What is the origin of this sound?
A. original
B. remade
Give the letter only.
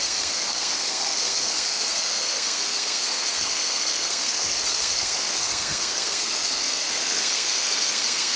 B